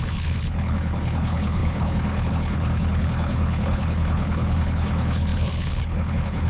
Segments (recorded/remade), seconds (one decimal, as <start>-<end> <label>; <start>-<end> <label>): 0.0-6.5 remade